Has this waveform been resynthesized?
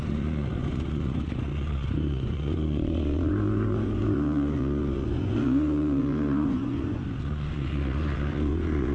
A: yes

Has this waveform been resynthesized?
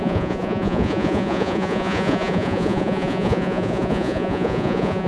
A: yes